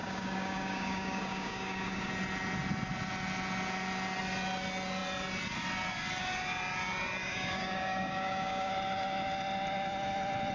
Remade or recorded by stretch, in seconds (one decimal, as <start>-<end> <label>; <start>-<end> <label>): 0.0-2.1 remade; 2.1-7.2 recorded; 7.2-8.7 remade; 8.7-10.5 recorded